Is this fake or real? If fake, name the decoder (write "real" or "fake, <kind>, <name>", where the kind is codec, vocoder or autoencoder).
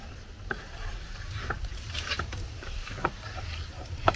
fake, vocoder, BigVGAN v2